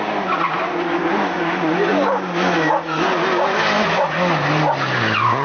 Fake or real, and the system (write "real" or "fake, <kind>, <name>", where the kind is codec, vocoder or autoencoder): real